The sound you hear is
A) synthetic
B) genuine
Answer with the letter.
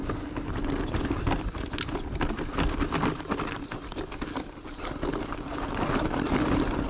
B